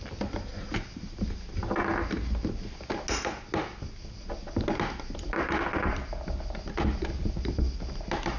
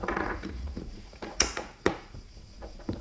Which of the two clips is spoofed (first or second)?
second